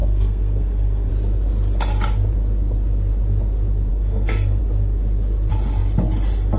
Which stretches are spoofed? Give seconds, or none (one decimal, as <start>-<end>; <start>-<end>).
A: 0.0-1.1; 3.9-4.6